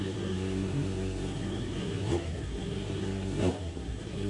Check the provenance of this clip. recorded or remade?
remade